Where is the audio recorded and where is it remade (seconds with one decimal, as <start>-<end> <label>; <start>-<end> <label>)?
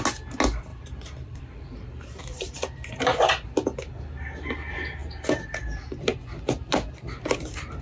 0.0-0.7 recorded; 0.7-3.5 remade; 3.5-7.8 recorded